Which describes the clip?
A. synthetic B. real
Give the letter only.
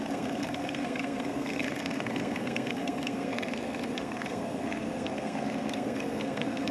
A